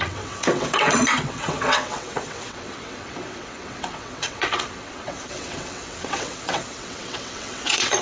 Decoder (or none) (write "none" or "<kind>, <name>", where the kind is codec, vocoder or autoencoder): vocoder, WaveNeXt